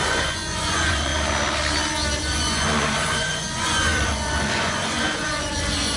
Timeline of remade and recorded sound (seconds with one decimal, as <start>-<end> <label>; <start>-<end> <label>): 0.0-1.1 remade; 1.1-2.2 recorded; 2.2-6.0 remade